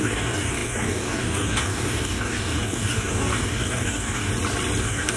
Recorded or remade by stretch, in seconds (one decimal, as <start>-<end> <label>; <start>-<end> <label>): 0.0-4.3 remade; 4.3-4.8 recorded; 4.8-5.2 remade